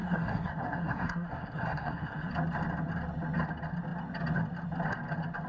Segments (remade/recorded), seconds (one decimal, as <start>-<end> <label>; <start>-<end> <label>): 0.0-2.3 remade; 2.3-5.5 recorded